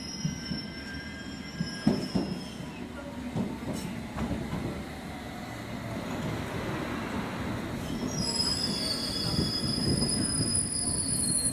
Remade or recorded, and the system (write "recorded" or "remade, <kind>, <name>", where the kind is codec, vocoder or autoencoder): recorded